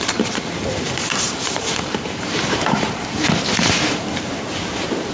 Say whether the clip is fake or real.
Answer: fake